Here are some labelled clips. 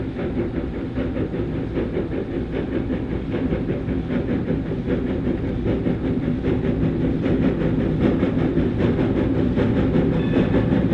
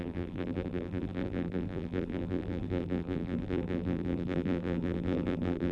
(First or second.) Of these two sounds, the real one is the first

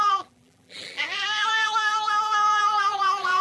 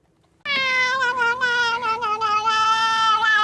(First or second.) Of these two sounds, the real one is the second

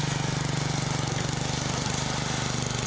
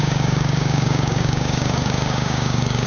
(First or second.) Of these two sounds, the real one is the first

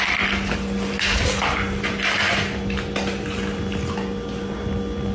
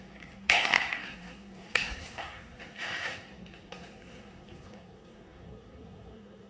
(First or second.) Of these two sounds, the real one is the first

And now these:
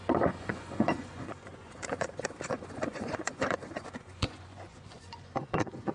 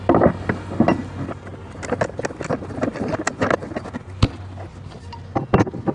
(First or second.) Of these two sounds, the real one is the second